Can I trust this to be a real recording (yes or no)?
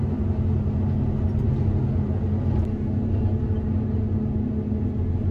yes